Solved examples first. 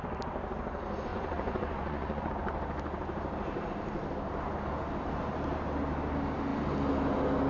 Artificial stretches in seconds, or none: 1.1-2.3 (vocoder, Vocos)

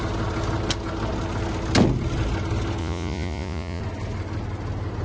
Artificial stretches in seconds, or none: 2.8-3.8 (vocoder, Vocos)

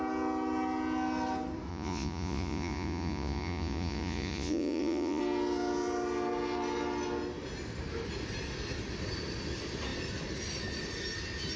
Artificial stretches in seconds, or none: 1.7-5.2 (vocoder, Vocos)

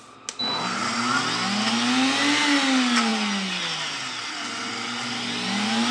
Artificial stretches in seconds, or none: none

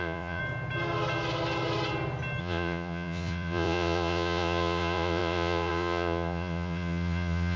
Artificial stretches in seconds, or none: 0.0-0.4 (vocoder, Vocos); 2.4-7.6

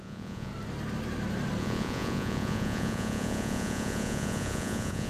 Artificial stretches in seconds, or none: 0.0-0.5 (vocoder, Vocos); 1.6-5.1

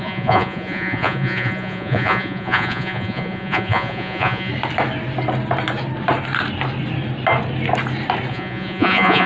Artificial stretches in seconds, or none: 0.0-4.5 (vocoder, Vocos); 8.3-9.3